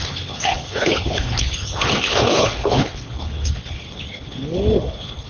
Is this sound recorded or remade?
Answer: remade